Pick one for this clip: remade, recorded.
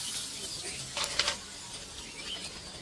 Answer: recorded